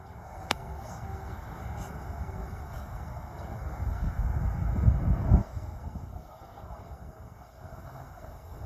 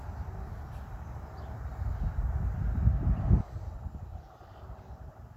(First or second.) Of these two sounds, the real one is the second